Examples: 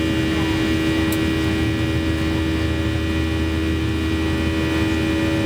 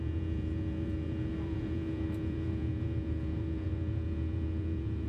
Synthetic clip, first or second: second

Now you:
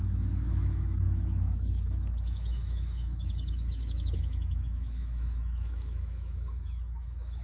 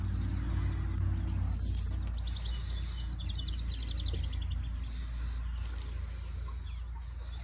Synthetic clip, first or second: first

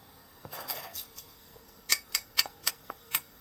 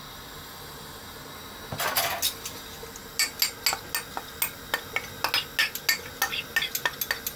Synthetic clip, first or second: first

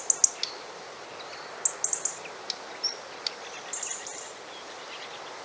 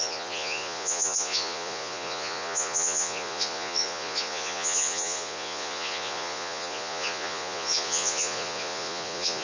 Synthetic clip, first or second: second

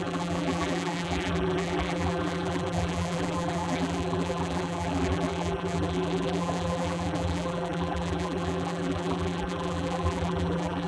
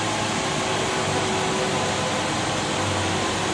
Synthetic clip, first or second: first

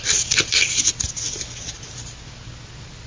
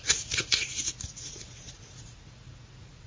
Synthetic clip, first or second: second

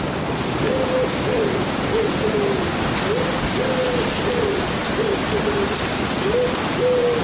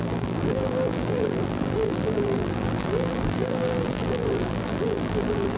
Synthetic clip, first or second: second